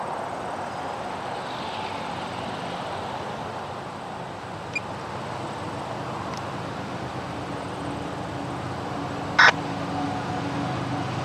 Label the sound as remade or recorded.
recorded